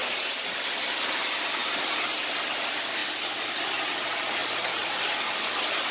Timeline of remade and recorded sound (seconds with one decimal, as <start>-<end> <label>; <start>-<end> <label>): 0.0-0.8 recorded; 0.8-3.0 remade; 3.0-4.0 recorded; 4.0-4.8 remade; 4.8-5.9 recorded